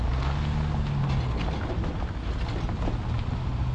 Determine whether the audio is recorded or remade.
recorded